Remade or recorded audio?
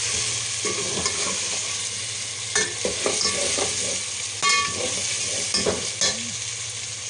recorded